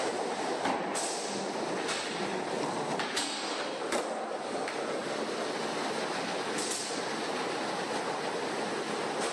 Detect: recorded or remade recorded